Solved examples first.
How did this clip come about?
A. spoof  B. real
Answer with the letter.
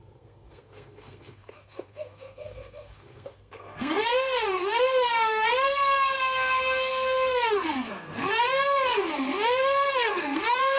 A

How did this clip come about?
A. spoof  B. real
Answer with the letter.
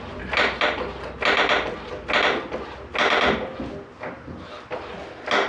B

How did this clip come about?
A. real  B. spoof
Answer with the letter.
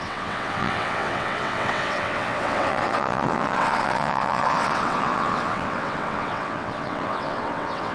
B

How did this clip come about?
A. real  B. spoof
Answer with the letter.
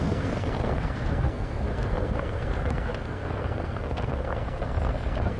B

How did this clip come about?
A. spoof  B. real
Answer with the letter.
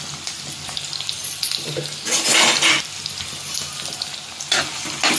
B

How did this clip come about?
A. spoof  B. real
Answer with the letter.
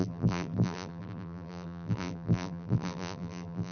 A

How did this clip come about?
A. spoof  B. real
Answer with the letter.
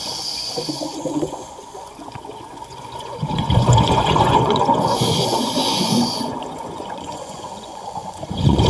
A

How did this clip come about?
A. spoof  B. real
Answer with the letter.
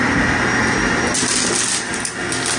B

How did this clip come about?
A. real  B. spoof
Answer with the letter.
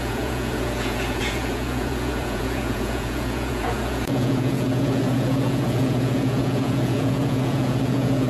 B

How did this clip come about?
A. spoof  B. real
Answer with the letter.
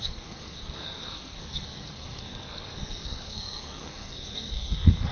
A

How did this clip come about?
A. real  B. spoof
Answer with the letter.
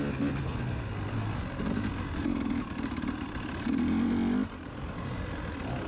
A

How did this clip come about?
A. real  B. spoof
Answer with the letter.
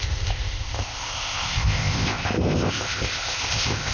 B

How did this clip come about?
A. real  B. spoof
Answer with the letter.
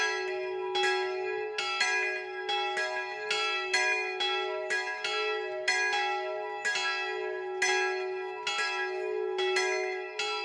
A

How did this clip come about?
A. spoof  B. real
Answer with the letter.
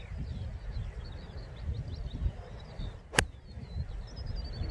B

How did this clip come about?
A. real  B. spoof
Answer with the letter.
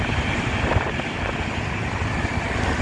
A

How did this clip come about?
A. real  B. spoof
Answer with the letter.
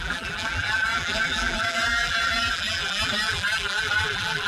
B